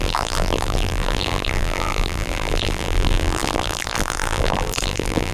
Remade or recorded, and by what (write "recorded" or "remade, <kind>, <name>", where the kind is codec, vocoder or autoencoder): remade, vocoder, BigVGAN v2